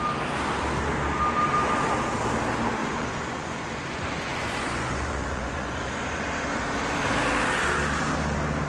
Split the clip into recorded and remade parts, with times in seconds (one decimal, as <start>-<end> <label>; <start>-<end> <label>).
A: 0.0-2.8 recorded; 2.8-6.6 remade; 6.6-8.7 recorded